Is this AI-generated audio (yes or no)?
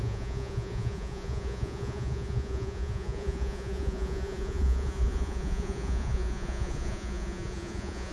yes